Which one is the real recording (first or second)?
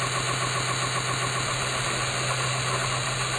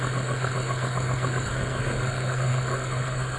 first